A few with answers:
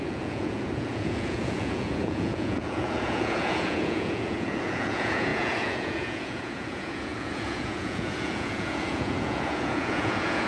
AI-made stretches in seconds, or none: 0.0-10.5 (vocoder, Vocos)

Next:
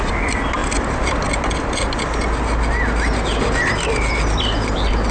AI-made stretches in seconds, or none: none